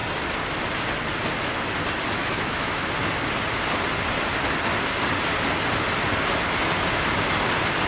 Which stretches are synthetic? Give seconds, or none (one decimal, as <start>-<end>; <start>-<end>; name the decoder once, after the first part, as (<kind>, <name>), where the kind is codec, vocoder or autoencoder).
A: 2.2-2.8 (autoencoder, DAC-VAE)